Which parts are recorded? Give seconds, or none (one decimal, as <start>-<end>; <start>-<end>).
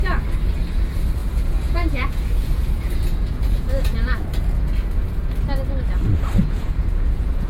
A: 0.0-1.2; 4.3-6.4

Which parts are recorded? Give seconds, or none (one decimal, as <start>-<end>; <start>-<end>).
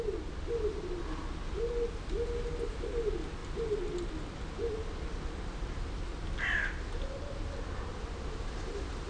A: 0.0-9.1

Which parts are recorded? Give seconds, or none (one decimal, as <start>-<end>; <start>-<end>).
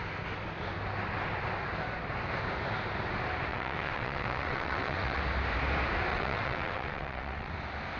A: 0.0-3.5; 5.2-6.1; 7.5-8.0